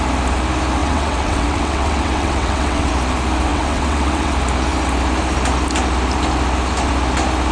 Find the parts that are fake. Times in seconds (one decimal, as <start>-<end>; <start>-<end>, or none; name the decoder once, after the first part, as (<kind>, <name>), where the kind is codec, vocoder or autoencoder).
0.8-2.9 (vocoder, WaveNeXt); 3.5-4.3